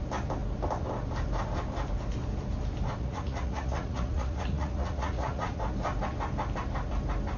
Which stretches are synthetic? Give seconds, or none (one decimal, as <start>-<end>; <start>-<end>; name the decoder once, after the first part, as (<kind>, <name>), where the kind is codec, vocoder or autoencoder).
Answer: 3.0-5.6 (vocoder, Vocos)